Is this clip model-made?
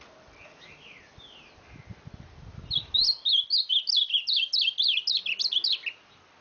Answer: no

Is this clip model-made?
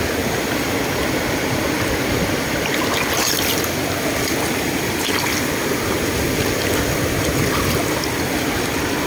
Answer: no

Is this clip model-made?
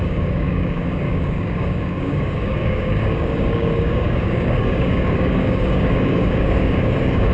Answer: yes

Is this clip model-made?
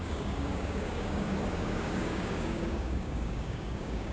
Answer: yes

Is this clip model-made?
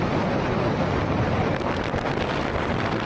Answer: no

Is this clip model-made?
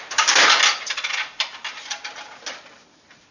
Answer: no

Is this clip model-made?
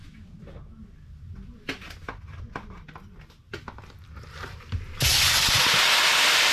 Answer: no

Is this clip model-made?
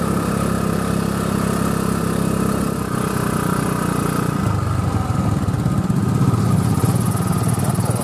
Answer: no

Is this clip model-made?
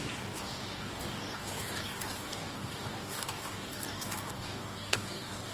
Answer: yes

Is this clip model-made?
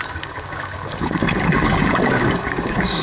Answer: yes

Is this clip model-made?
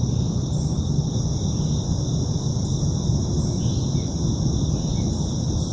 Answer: no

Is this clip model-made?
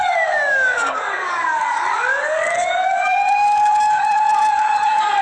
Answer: yes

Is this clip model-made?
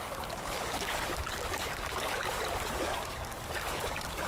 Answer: yes